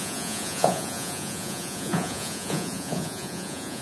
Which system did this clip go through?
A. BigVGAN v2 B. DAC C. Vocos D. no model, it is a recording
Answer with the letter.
C